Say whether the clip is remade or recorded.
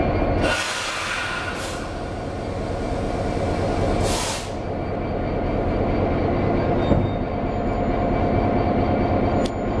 recorded